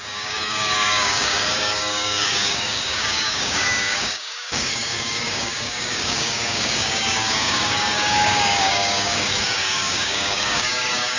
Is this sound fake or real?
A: fake